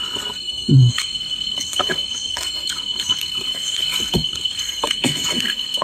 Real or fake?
fake